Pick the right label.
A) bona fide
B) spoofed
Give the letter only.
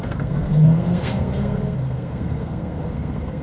B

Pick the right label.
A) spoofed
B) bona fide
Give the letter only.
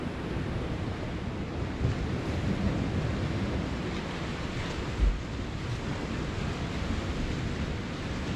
B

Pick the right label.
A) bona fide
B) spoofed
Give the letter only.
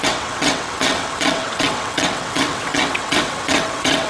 B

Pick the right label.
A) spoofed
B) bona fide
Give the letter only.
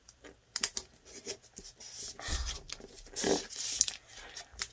B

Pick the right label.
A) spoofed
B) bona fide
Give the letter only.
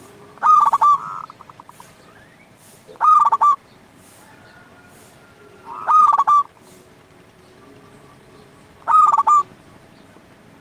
A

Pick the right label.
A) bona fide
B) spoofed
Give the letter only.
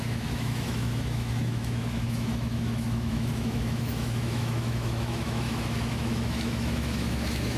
B